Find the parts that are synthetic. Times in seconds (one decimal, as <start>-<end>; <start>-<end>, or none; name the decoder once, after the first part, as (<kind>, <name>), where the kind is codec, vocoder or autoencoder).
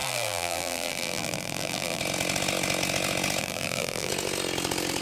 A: 0.0-2.0 (vocoder, BigVGAN v2); 3.4-4.1